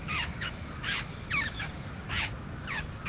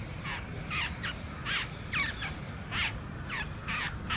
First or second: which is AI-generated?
first